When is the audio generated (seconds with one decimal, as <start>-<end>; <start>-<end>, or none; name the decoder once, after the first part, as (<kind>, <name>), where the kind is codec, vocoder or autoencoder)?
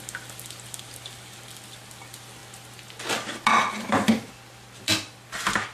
none